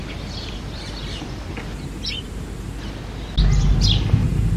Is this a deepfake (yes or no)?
no